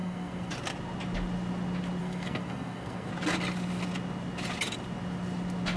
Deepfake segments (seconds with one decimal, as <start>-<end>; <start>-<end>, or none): 0.0-0.5; 2.0-3.1